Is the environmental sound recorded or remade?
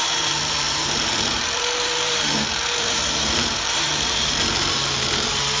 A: remade